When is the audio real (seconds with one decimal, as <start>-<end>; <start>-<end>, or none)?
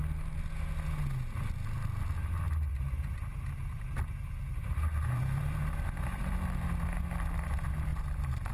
0.0-2.7; 6.2-7.9